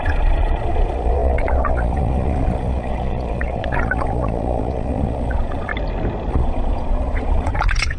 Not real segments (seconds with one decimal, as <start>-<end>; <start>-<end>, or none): 0.0-5.7; 6.3-8.0